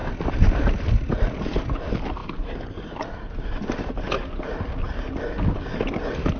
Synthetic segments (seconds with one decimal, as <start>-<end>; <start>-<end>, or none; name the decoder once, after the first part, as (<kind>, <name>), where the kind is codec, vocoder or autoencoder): none